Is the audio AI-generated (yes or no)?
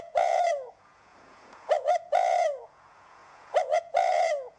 yes